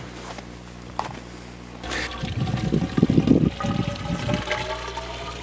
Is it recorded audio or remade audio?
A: recorded